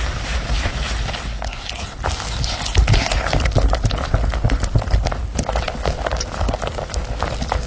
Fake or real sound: real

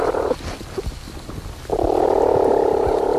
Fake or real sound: real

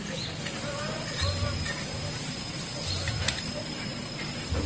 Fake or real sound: real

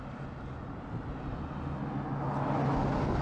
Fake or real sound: real